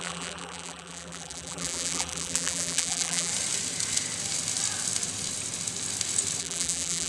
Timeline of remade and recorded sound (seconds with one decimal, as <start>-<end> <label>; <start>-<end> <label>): 0.0-3.3 remade; 3.3-6.4 recorded; 6.4-7.1 remade